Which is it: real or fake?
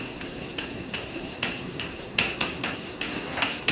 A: fake